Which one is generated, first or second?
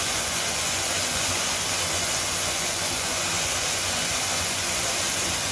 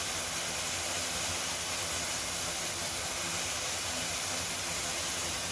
first